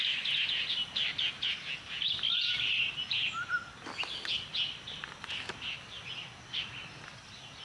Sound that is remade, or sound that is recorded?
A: recorded